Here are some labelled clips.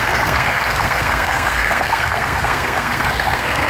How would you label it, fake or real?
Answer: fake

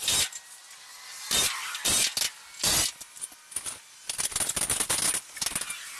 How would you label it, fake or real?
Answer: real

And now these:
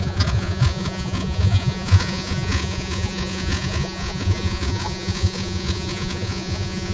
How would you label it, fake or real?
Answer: fake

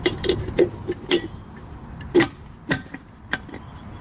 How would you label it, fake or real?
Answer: real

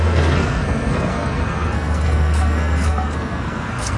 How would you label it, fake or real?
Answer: fake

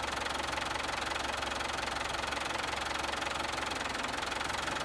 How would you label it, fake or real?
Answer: real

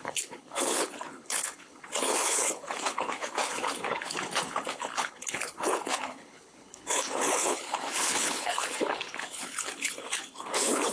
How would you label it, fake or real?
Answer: fake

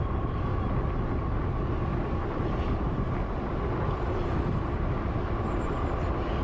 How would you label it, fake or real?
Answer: real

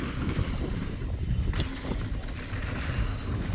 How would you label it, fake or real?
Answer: real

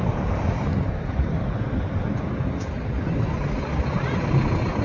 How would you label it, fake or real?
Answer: real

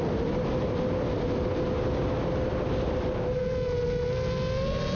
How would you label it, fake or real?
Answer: real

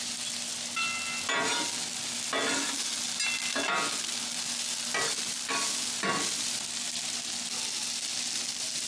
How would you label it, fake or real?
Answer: real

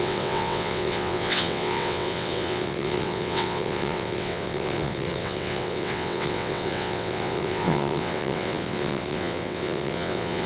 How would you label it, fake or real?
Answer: fake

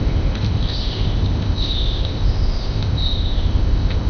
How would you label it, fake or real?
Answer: fake